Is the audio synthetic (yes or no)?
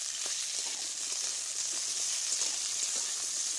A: no